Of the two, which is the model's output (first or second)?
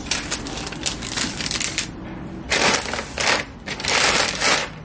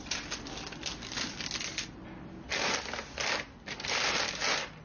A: first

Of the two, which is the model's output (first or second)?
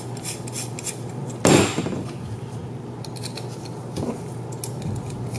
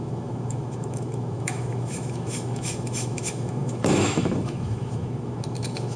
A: second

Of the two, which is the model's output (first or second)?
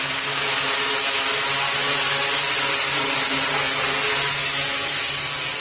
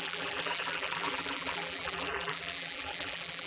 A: second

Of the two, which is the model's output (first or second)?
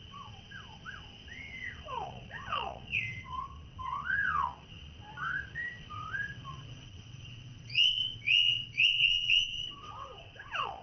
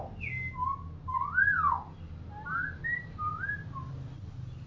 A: first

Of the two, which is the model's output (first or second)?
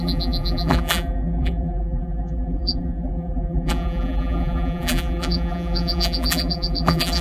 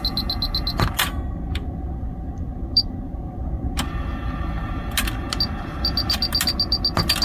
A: first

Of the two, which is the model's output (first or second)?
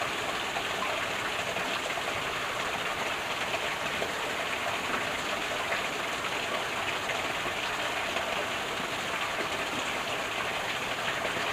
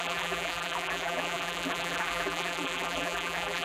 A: second